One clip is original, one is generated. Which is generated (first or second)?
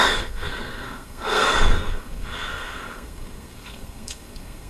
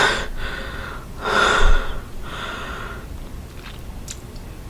first